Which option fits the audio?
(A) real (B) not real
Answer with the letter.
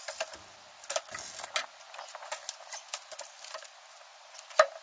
A